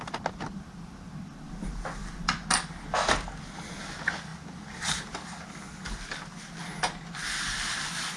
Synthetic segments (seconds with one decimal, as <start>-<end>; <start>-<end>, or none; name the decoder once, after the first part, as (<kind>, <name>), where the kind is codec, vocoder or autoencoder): none